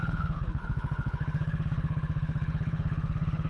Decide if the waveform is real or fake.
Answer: fake